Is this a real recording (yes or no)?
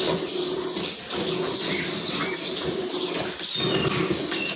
yes